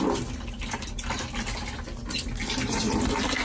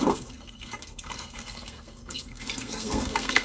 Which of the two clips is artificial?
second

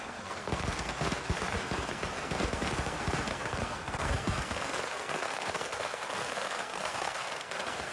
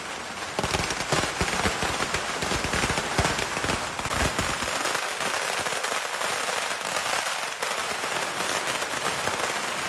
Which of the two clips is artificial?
first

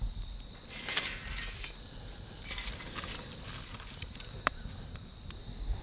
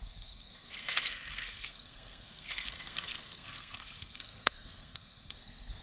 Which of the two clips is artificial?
second